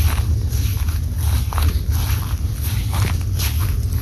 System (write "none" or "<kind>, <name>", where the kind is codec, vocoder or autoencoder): none